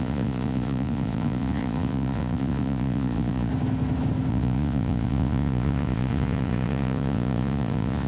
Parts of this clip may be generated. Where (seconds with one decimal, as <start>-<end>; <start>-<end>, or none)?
0.0-3.5; 4.3-8.1